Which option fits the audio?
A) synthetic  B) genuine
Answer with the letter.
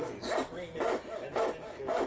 B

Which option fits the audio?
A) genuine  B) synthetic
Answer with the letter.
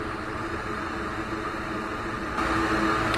A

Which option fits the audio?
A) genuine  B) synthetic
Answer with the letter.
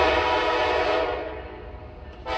A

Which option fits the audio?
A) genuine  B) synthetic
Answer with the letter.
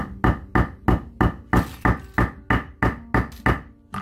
A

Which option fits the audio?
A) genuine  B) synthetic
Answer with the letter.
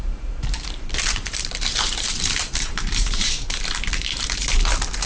B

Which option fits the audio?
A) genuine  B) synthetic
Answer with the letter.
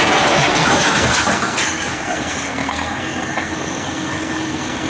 B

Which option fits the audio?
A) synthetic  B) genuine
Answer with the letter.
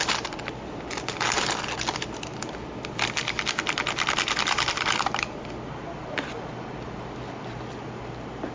B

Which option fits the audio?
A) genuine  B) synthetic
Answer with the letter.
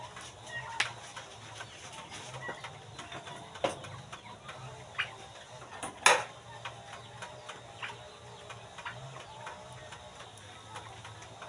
A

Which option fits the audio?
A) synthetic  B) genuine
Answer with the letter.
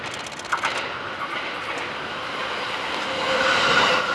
B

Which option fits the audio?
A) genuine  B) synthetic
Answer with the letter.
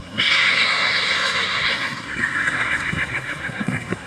B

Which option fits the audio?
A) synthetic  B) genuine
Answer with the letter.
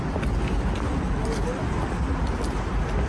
B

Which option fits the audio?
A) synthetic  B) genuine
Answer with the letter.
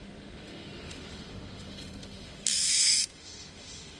A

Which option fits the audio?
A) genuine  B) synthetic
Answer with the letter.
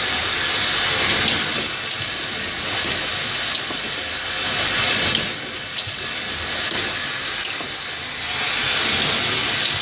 A